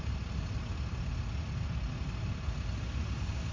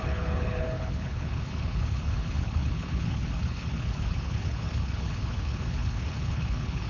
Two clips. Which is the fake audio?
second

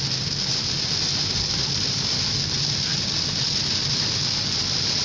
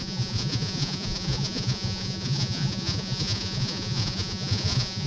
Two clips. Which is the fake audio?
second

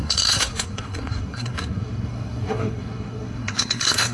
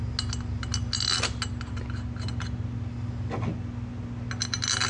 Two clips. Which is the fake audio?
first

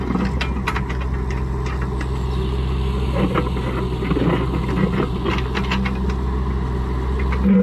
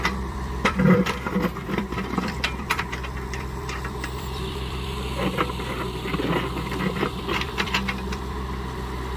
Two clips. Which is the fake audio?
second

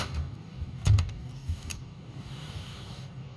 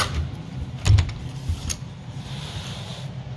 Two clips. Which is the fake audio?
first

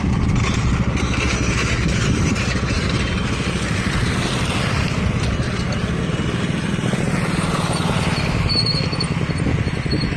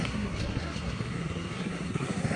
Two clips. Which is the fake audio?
second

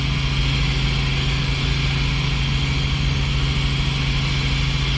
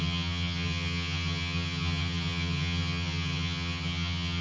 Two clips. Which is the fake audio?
second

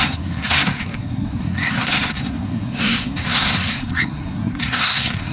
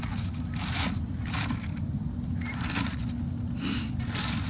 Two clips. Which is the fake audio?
first